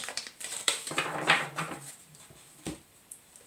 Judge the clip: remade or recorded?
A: remade